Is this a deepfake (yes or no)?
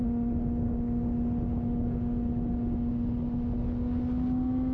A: no